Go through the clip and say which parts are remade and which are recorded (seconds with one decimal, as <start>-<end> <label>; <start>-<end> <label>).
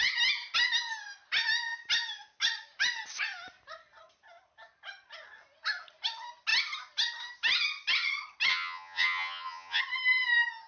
0.0-8.5 recorded; 8.5-9.8 remade; 9.8-10.7 recorded